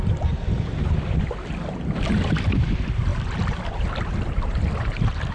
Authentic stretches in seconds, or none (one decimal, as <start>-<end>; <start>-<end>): none